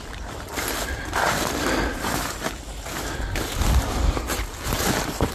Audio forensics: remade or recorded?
recorded